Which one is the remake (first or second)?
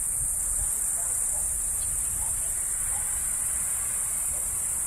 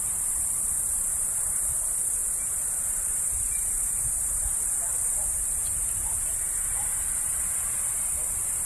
second